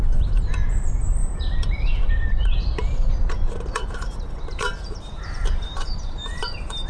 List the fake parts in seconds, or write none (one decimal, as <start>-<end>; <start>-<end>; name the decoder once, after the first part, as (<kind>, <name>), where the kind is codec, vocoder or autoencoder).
1.2-2.1 (vocoder, BigVGAN v2); 3.7-6.9